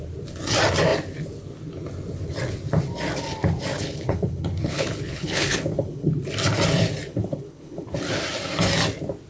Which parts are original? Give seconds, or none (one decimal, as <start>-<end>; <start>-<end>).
0.0-3.7; 6.1-7.1; 8.0-9.3